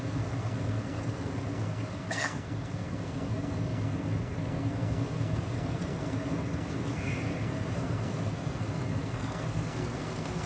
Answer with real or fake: fake